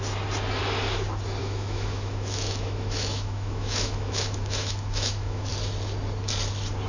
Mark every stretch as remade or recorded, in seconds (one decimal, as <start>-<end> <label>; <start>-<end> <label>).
0.0-1.4 recorded; 1.4-5.5 remade; 5.5-6.9 recorded